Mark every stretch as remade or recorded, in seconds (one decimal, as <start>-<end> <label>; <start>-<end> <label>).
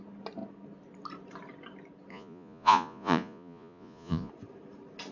0.0-2.1 recorded; 2.1-4.3 remade; 4.3-5.1 recorded